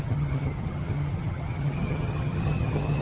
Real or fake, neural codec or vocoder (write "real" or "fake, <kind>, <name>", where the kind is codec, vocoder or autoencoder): fake, vocoder, HiFi-GAN